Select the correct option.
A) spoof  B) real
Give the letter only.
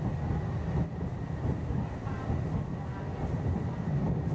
B